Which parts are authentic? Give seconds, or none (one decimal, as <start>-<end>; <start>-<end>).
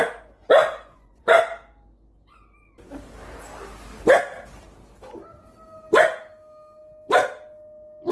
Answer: 0.0-0.6; 1.4-8.1